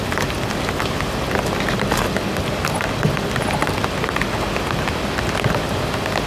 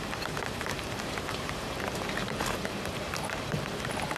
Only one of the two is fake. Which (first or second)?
second